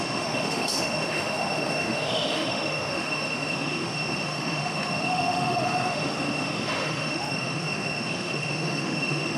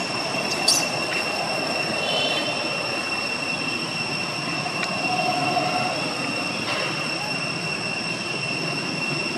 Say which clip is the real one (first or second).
second